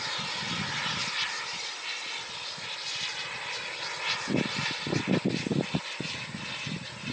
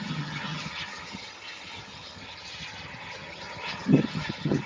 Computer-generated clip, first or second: second